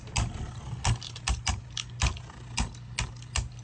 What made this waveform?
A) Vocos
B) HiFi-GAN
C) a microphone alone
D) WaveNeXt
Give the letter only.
C